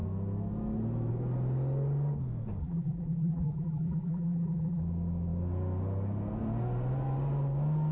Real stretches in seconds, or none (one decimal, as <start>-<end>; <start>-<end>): 0.0-2.6; 4.8-7.9